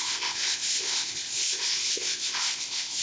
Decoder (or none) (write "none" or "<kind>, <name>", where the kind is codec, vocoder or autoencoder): codec, ZipCodec